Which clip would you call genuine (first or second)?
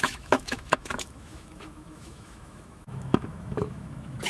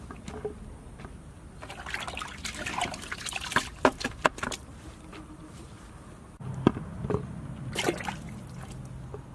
second